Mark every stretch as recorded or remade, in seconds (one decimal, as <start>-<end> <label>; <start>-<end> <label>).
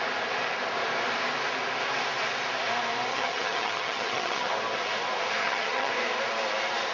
0.0-3.1 recorded; 3.1-4.5 remade; 4.5-5.4 recorded; 5.4-5.9 remade; 5.9-6.9 recorded